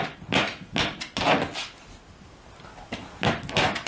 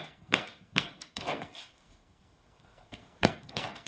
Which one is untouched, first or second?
first